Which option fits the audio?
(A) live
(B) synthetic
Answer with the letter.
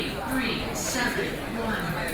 B